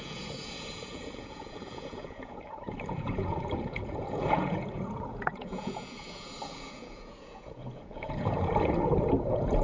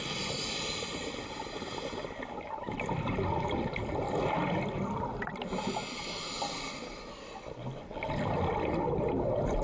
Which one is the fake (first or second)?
first